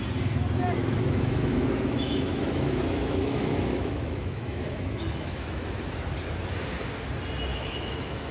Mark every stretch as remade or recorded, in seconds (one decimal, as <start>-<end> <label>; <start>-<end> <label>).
0.0-0.8 recorded; 0.8-5.8 remade; 5.8-7.5 recorded; 7.5-8.3 remade